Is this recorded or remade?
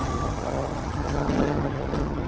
remade